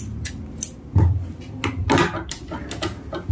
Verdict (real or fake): real